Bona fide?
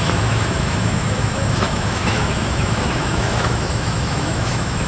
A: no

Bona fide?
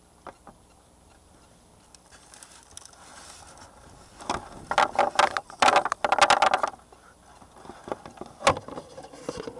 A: yes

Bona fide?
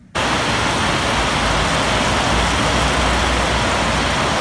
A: yes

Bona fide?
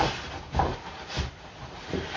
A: yes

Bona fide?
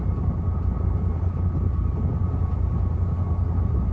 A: yes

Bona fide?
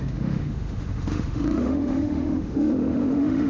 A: no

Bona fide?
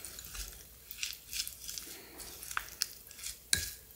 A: yes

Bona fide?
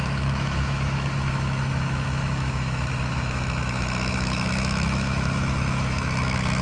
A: no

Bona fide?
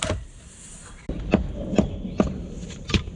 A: yes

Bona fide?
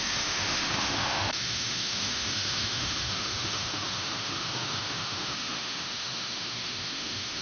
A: no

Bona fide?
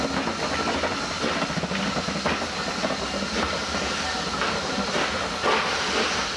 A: yes